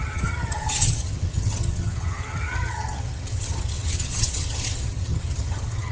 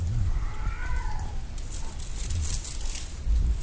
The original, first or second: second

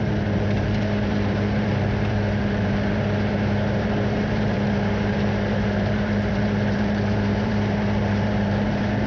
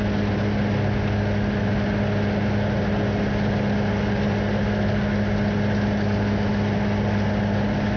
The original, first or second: second